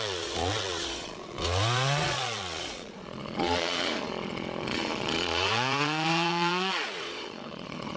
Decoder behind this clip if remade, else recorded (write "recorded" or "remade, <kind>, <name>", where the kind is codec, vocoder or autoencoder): remade, vocoder, Vocos